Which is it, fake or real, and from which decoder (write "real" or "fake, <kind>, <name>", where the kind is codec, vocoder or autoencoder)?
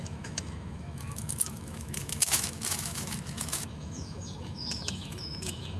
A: fake, autoencoder, DAC-VAE